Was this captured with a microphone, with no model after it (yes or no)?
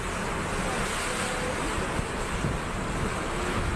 yes